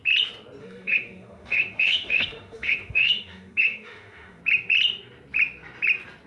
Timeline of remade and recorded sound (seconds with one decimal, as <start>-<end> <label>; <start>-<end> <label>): 0.0-0.6 recorded; 0.6-4.4 remade; 4.4-6.3 recorded